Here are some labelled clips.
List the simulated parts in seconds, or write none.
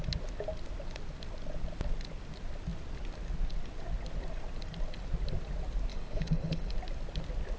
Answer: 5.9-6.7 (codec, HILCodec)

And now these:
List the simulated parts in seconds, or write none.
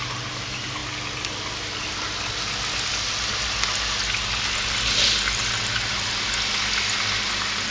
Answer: none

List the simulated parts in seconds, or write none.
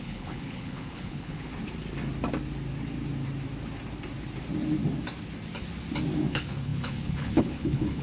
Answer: 0.0-1.5 (codec, HILCodec); 6.3-8.0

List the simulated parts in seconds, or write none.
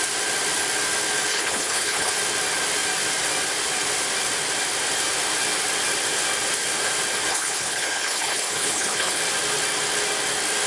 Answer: 1.3-2.1 (codec, HILCodec); 7.3-9.2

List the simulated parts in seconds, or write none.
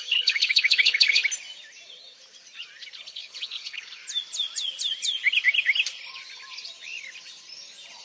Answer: 0.0-1.2 (codec, HILCodec); 3.0-4.0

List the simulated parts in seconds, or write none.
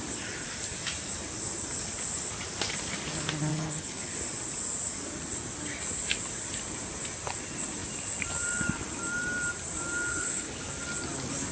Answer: 3.5-4.1 (codec, HILCodec); 10.1-10.7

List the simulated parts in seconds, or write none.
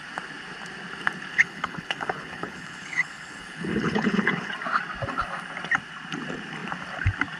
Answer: 1.3-4.5 (codec, HILCodec)